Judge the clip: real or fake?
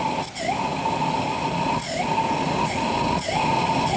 real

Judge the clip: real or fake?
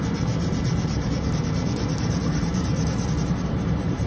fake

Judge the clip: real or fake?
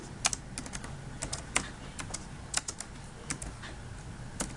real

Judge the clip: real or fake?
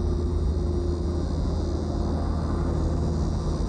real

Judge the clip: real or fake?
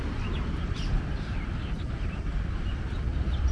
fake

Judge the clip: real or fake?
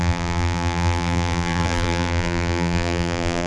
fake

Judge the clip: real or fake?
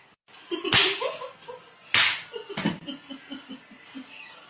real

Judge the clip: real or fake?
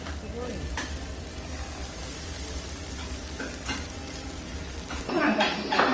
real